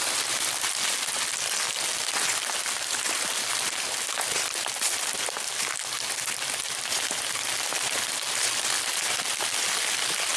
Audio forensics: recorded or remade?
recorded